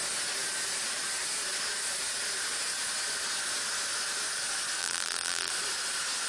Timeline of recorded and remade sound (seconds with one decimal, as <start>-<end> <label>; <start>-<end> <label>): 0.0-4.8 recorded; 4.8-5.5 remade; 5.5-6.3 recorded